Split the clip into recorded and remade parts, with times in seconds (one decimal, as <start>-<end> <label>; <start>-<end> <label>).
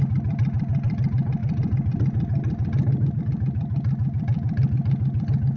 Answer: 0.0-5.6 recorded